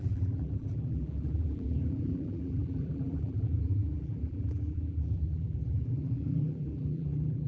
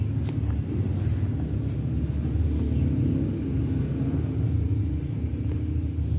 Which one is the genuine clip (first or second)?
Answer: second